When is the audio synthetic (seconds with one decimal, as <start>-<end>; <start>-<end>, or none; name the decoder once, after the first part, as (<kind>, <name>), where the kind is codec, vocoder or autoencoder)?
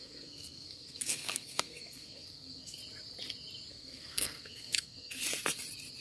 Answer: 0.0-2.8 (codec, SNAC); 3.7-5.2